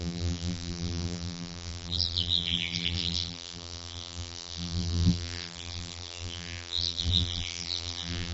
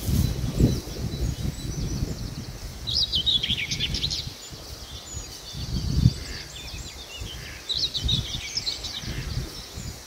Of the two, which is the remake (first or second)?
first